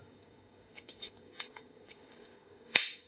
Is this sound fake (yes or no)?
yes